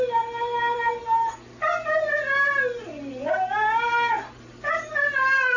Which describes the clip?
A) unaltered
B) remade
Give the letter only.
A